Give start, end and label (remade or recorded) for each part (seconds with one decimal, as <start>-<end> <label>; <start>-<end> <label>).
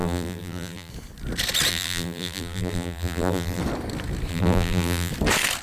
0.0-0.9 remade; 0.9-1.7 recorded; 1.7-3.6 remade; 3.6-4.3 recorded; 4.3-5.1 remade; 5.1-5.6 recorded